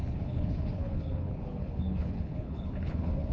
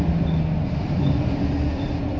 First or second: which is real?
second